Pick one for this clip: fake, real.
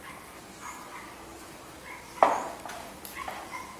real